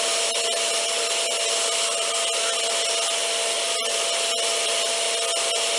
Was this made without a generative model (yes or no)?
yes